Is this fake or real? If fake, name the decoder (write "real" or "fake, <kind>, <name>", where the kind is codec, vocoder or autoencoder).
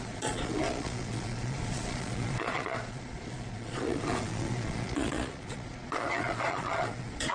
fake, vocoder, Vocos